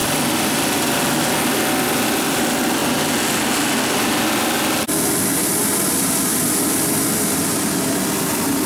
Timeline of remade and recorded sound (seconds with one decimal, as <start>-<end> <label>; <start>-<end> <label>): 0.0-8.7 recorded